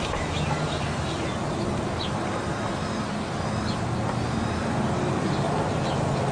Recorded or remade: recorded